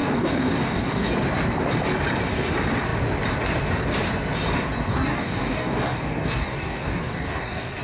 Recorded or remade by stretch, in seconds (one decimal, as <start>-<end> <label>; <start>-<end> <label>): 0.0-1.1 remade; 1.1-4.9 recorded; 4.9-7.8 remade